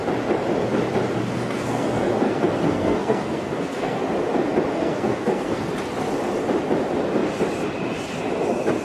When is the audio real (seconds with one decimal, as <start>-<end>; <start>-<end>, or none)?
0.0-1.3; 4.0-4.7; 5.7-8.8